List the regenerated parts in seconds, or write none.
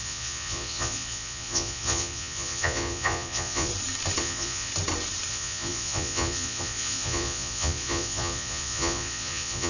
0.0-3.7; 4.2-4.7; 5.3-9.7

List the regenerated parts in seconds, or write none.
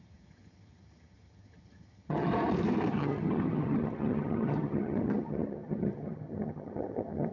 0.0-2.3; 2.9-7.3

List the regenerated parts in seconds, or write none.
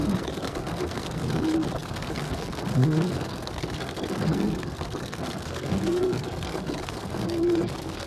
0.0-8.1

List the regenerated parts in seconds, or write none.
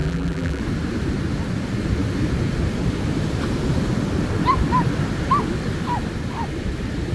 0.0-0.6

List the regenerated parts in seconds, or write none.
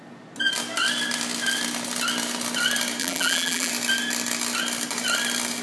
3.0-3.7